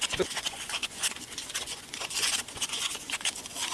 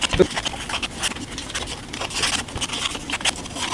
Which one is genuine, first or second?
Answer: second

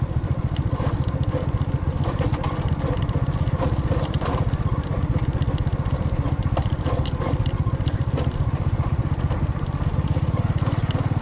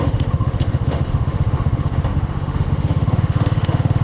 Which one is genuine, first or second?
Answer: first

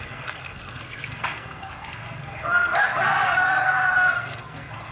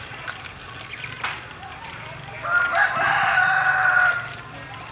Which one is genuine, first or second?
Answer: second